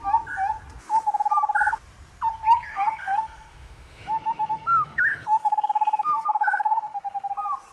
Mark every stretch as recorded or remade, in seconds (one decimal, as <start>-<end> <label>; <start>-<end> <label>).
0.0-2.7 recorded; 2.7-7.3 remade; 7.3-7.7 recorded